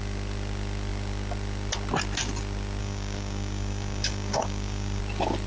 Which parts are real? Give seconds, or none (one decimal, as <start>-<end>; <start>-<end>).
0.0-2.8; 5.0-5.5